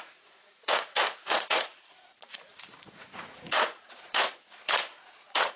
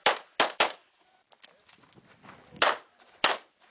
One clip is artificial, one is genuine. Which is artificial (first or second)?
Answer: first